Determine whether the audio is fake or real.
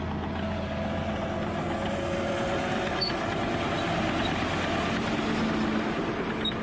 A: real